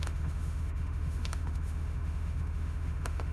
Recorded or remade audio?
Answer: remade